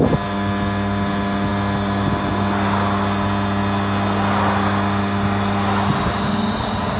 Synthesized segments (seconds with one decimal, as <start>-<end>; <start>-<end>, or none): none